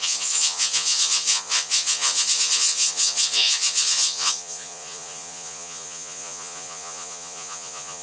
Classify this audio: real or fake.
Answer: fake